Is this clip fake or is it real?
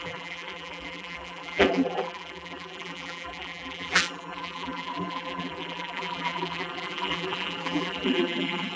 fake